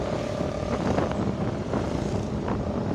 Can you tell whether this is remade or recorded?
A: recorded